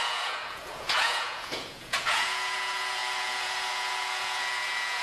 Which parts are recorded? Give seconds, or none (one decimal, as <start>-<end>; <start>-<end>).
none